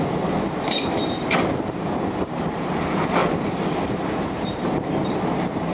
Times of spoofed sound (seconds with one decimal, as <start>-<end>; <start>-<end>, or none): none